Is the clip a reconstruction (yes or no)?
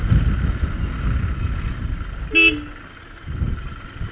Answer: no